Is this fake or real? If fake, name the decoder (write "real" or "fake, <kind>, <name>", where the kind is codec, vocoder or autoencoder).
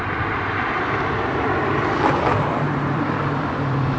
fake, vocoder, BigVGAN v2